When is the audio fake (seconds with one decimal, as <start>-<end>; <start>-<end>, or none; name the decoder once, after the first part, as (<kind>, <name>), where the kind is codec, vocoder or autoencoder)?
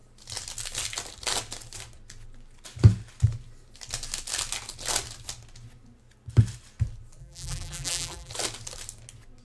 7.2-8.3 (vocoder, BigVGAN v2)